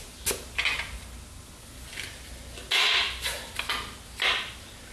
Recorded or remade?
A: recorded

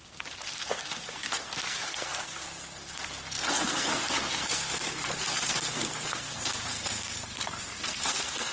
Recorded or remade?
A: remade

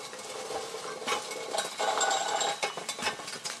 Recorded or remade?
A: recorded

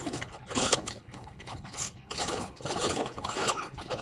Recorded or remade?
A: remade